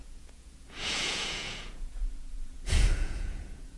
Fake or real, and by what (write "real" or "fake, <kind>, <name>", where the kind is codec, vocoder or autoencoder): fake, vocoder, Vocos